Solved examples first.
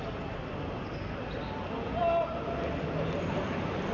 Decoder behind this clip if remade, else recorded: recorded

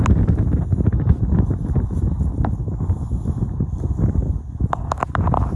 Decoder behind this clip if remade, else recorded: recorded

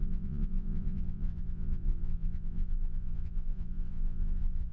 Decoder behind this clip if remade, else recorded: remade, vocoder, Vocos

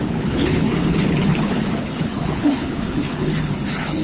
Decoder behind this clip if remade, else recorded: remade, codec, HILCodec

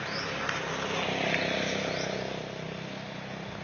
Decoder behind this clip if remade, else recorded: recorded